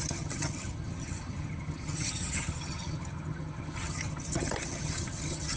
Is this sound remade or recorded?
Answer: remade